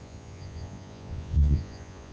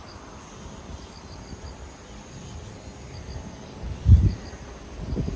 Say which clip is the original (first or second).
second